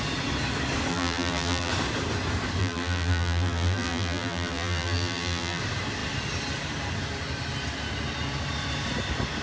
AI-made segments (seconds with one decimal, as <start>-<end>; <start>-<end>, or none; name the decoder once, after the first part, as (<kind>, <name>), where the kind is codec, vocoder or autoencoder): 0.9-1.7 (vocoder, BigVGAN v2); 2.6-5.6